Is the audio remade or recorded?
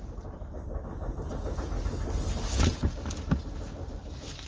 recorded